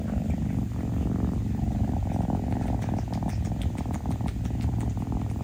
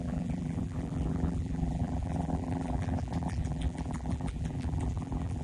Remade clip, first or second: second